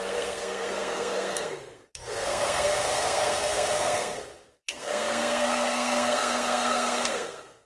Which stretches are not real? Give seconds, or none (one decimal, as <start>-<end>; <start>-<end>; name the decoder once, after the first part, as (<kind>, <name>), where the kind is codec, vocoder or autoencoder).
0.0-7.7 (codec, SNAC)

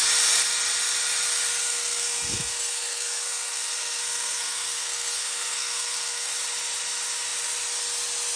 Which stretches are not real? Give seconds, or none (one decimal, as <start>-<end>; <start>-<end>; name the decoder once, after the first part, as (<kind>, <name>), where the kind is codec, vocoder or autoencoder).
1.6-6.3 (codec, SNAC)

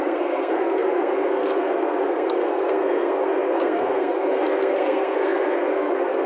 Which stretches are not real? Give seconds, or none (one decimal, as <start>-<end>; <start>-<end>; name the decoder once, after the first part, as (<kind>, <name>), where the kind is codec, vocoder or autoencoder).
0.0-6.3 (codec, SNAC)

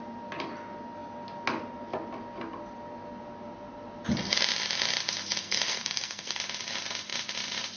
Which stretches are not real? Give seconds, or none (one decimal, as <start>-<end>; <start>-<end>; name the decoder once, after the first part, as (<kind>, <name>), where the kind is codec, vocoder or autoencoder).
5.4-6.4 (codec, SNAC)

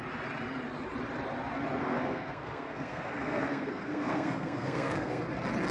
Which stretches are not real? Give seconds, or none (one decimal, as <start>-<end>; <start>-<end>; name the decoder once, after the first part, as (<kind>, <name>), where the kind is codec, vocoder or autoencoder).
1.8-5.2 (codec, SNAC)